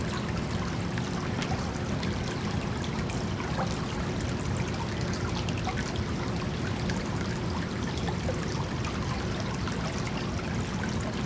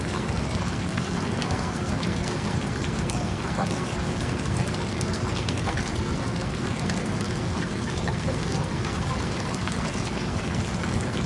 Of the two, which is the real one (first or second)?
first